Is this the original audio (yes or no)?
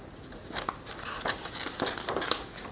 yes